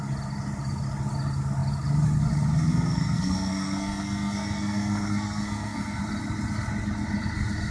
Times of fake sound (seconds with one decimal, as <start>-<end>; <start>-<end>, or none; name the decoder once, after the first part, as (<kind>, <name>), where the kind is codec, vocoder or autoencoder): 2.7-6.0 (codec, SNAC)